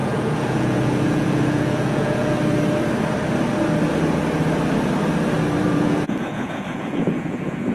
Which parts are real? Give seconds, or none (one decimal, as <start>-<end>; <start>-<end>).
2.4-5.6